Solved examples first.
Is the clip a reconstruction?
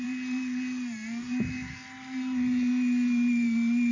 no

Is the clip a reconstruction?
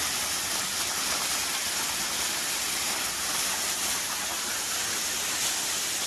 no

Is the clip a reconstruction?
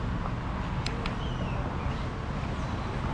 no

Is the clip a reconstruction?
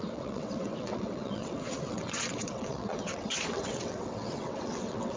yes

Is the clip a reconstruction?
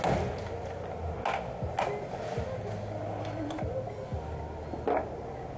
no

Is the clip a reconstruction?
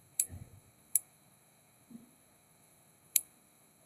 yes